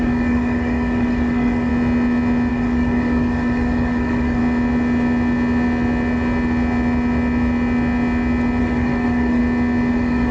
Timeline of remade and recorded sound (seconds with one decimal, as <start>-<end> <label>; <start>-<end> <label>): 0.0-1.7 remade; 1.7-2.5 recorded; 2.5-4.4 remade; 4.4-8.6 recorded; 8.6-9.4 remade; 9.4-9.9 recorded; 9.9-10.3 remade